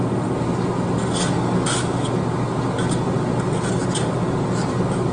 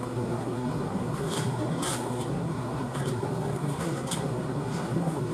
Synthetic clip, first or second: second